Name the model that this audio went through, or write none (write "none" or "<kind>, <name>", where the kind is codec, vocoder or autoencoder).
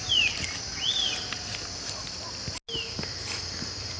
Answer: none